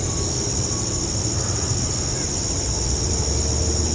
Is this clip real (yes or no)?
yes